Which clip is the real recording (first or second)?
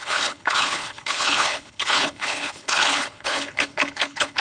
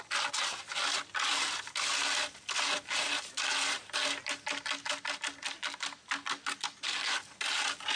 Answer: second